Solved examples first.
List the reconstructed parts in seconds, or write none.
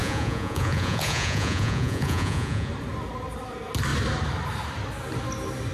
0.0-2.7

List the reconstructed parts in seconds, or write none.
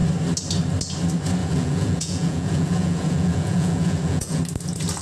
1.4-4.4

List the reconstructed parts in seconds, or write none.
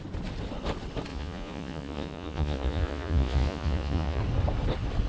1.1-4.2